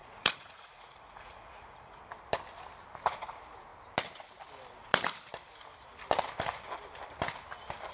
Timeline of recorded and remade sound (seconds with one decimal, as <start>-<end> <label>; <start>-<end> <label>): 0.0-2.0 remade; 2.0-7.9 recorded